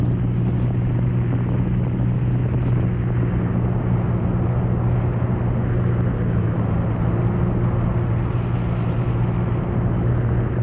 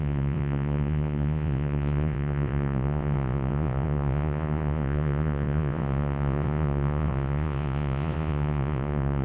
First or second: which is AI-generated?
second